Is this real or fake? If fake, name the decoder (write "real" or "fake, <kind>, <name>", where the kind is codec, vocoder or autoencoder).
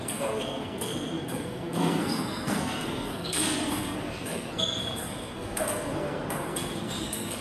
fake, codec, SNAC